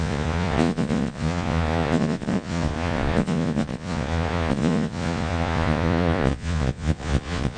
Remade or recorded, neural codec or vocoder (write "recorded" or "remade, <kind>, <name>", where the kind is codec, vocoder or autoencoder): remade, vocoder, Vocos